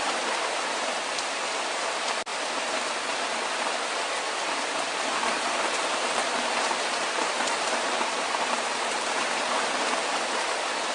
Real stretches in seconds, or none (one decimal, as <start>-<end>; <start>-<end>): 2.3-5.0